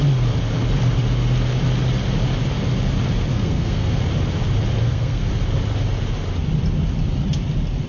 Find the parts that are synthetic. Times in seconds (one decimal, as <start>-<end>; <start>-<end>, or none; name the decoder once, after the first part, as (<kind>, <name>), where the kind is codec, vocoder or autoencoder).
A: 3.3-4.0 (codec, SNAC); 4.8-5.3